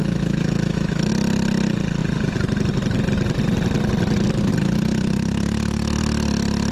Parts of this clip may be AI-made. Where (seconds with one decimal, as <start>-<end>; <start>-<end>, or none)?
0.0-1.1